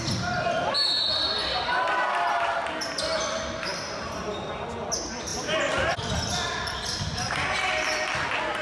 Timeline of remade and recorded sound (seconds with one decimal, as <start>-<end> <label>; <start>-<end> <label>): 0.0-8.6 recorded